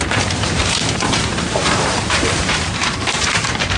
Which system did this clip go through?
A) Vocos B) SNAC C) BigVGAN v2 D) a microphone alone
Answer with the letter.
C